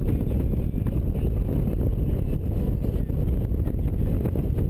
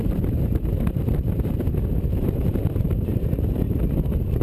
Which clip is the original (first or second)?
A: first